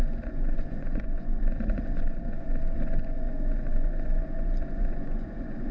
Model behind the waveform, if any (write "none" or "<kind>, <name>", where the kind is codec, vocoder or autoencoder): vocoder, Vocos